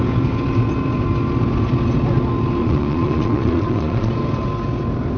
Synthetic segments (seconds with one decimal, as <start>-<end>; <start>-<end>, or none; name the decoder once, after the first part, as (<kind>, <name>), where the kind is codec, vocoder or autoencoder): 2.6-4.1 (vocoder, Vocos)